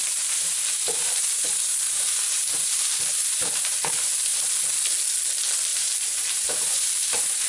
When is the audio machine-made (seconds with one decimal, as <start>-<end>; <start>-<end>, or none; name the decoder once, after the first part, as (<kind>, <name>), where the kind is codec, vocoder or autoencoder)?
0.0-4.5 (vocoder, BigVGAN v2); 5.7-7.5